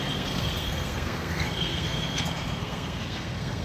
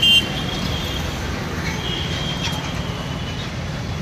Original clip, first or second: second